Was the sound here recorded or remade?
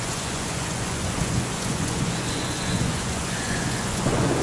remade